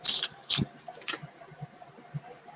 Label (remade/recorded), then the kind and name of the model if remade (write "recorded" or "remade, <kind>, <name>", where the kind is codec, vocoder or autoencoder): remade, vocoder, BigVGAN v2